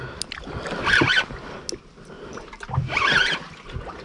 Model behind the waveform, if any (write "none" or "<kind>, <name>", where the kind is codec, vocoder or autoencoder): none